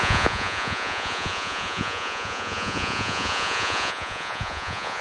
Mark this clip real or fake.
fake